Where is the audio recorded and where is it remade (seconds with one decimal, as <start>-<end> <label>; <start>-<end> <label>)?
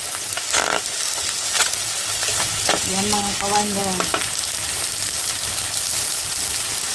0.0-6.9 recorded